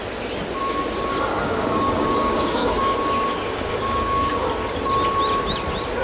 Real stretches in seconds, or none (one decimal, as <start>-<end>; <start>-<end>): 0.0-1.4; 4.3-6.0